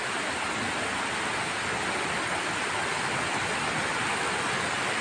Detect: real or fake real